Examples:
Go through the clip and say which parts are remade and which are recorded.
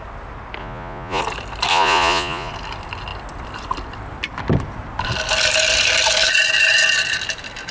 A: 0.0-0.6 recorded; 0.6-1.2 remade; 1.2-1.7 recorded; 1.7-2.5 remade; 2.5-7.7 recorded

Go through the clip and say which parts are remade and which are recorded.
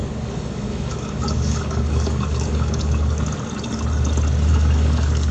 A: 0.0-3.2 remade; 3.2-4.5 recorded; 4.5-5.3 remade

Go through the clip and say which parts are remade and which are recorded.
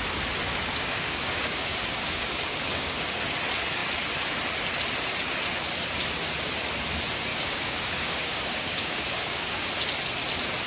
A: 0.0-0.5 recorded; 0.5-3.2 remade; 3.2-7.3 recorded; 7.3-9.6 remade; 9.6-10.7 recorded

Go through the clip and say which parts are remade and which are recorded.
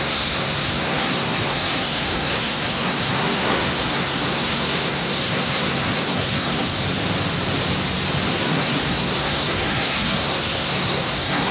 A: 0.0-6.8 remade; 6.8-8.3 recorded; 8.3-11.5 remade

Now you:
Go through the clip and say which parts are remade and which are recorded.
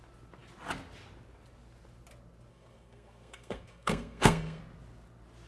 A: 0.0-2.5 recorded; 2.5-4.6 remade; 4.6-5.5 recorded